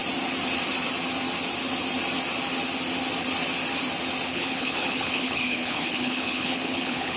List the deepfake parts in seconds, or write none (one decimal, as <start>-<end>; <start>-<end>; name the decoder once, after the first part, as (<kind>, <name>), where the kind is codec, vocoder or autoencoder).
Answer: 4.3-7.2 (codec, HILCodec)